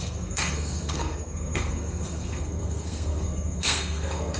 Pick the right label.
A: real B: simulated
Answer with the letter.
B